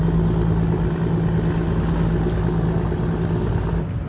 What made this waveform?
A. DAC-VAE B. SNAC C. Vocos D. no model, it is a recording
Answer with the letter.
D